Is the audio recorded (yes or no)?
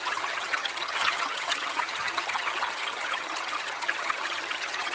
no